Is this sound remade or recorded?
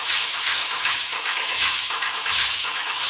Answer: remade